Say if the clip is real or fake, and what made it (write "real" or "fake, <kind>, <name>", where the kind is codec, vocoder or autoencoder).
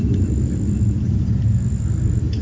real